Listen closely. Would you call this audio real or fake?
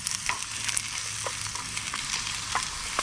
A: real